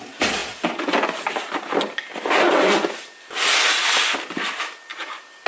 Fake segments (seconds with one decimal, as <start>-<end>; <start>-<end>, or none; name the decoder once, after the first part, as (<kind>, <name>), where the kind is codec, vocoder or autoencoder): none